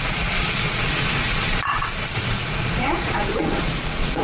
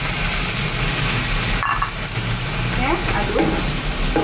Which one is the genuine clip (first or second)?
second